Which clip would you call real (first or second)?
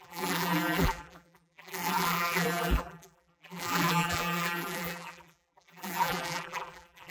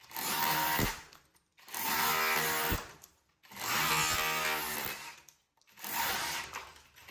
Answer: second